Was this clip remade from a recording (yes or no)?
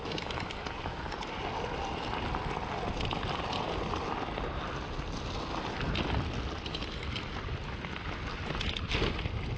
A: no